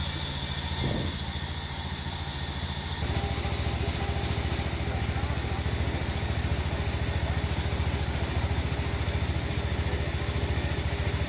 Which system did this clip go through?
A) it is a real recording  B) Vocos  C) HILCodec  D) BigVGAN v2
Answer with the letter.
A